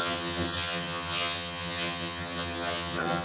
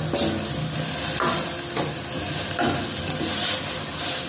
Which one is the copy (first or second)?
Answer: first